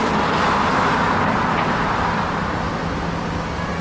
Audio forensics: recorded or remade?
recorded